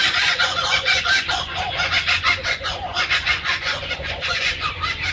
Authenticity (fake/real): fake